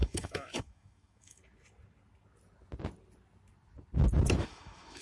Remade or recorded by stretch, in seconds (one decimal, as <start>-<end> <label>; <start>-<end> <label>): 0.0-1.4 remade; 1.4-4.4 recorded; 4.4-5.0 remade

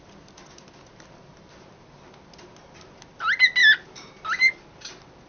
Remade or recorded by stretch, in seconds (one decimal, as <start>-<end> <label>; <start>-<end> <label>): 0.0-5.3 recorded